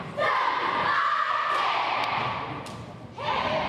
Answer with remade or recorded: remade